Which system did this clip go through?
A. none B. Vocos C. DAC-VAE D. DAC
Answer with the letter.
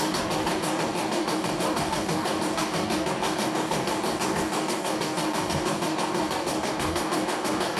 D